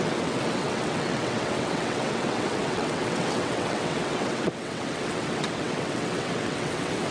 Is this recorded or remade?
remade